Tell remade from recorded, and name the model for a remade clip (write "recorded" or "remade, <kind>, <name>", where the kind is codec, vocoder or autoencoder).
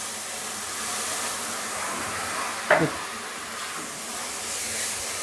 recorded